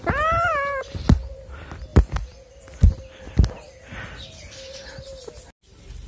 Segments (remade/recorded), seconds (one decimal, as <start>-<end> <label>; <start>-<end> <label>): 0.0-6.1 recorded